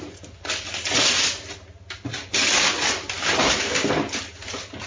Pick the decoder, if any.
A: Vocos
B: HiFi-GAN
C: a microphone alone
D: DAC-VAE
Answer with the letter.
C